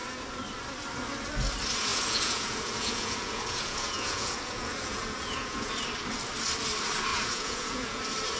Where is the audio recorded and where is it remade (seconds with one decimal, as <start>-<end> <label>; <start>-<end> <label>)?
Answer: 0.0-1.9 recorded; 1.9-5.7 remade; 5.7-7.1 recorded; 7.1-8.0 remade; 8.0-8.4 recorded